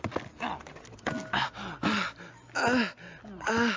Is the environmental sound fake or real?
real